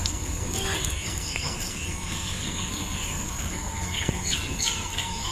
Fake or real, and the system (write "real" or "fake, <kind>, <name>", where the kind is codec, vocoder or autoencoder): fake, codec, SNAC